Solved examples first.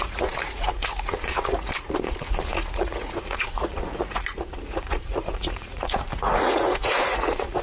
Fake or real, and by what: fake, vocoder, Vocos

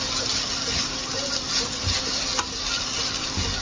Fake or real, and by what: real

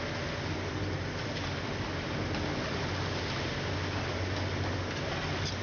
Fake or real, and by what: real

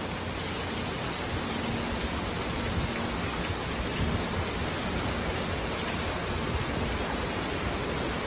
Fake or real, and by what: real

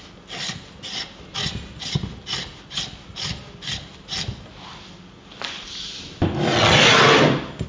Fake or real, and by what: real